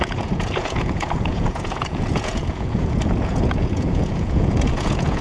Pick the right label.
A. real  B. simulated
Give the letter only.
B